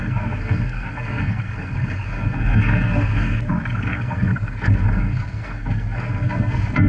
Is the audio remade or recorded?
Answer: remade